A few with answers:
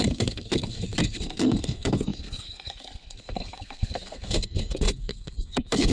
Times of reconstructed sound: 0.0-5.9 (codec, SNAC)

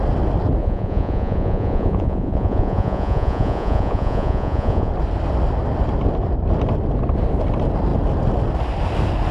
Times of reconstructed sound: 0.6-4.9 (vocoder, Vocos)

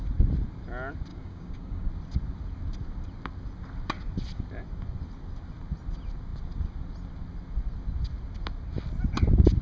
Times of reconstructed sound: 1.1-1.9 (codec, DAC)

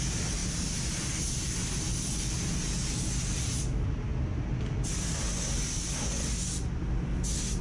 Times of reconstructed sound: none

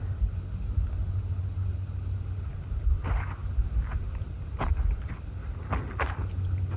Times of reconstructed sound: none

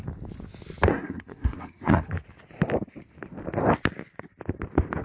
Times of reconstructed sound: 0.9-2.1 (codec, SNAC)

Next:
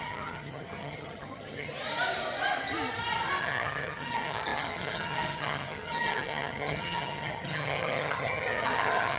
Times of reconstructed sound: 0.0-1.7 (vocoder, HiFi-GAN); 3.4-9.2

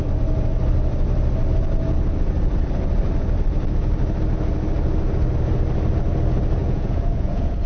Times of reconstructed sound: 6.6-7.7 (vocoder, Vocos)